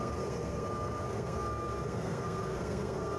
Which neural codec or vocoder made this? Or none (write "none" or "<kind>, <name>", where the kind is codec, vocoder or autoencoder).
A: codec, SNAC